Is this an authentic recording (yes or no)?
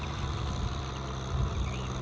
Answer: yes